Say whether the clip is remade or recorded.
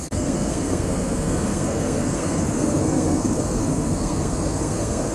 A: remade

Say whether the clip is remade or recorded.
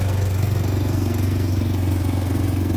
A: remade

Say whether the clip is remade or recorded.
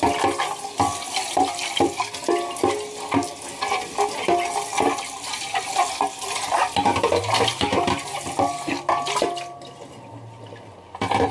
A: recorded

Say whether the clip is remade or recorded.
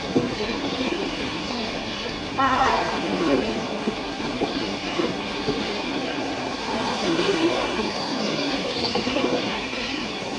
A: remade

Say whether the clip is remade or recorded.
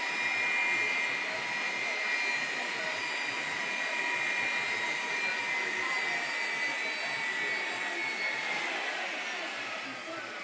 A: recorded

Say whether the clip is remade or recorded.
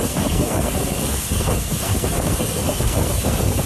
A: remade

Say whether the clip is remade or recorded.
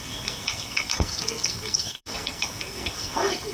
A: remade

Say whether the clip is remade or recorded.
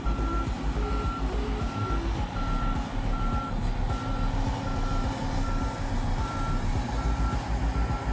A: recorded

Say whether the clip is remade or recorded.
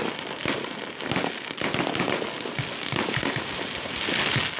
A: recorded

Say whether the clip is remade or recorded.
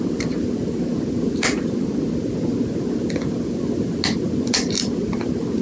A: recorded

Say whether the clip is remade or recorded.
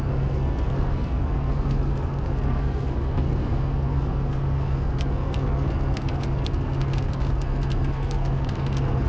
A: remade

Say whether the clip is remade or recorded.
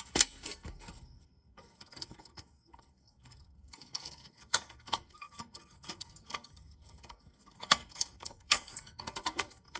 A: remade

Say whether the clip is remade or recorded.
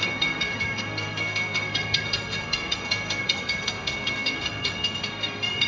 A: remade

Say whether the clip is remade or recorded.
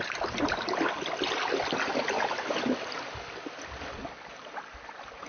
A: recorded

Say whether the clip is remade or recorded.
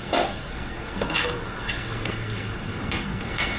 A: remade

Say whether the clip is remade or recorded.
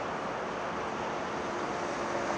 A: recorded